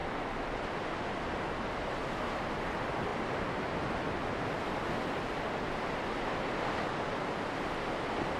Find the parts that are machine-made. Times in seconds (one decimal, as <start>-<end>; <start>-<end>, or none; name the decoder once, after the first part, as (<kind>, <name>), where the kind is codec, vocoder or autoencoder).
none